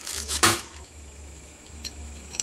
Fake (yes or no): yes